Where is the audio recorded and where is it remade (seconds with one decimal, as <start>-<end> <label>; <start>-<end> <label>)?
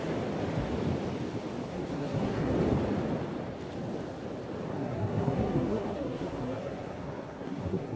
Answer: 0.0-1.7 recorded; 1.7-2.5 remade; 2.5-4.7 recorded; 4.7-8.0 remade